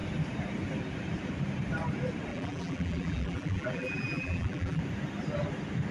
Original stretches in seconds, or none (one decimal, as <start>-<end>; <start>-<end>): 0.0-2.3; 4.8-5.9

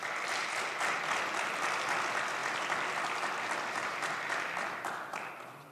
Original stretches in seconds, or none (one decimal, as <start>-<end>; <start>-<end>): 0.0-2.4; 5.3-5.7

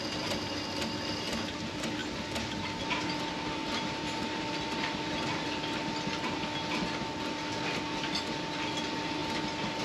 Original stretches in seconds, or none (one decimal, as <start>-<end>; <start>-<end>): 0.0-3.6; 4.4-9.8

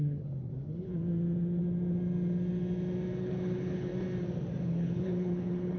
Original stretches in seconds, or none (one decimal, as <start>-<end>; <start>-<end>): 0.9-3.2; 3.9-4.6

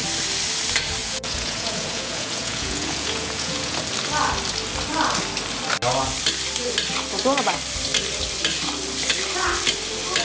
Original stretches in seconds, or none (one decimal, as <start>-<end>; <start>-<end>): 0.0-1.0; 3.8-10.2

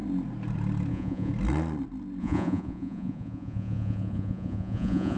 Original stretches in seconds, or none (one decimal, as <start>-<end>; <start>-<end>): 0.0-0.9; 1.3-2.2

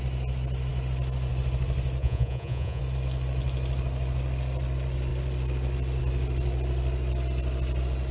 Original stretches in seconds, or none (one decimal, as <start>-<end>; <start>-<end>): 0.0-2.0; 2.8-8.1